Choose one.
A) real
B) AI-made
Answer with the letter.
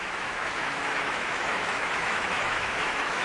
B